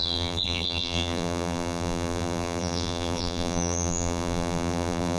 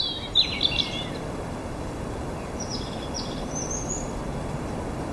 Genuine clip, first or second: second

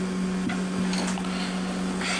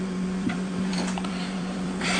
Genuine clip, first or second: first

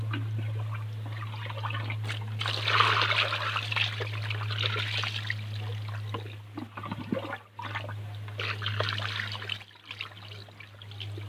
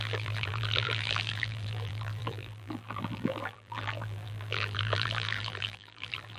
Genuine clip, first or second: first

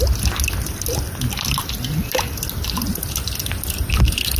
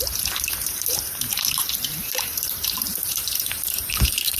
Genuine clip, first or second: first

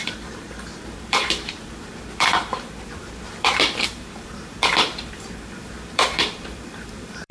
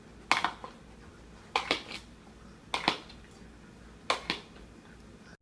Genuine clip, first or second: second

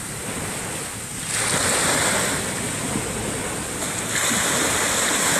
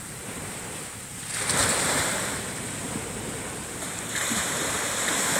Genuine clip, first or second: first